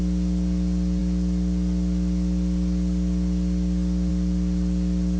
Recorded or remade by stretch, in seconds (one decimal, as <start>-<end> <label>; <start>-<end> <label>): 0.0-5.2 recorded